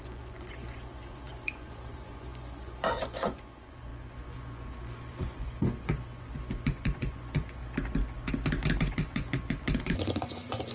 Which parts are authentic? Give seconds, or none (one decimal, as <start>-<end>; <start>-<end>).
7.6-8.8